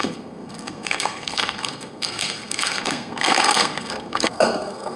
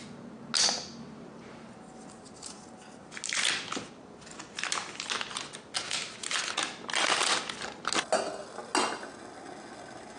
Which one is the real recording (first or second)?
second